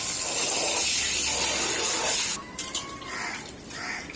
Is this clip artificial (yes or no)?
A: no